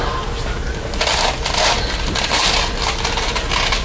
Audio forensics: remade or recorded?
recorded